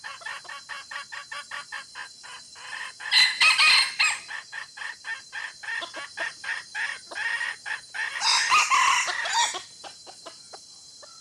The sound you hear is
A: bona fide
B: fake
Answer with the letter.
A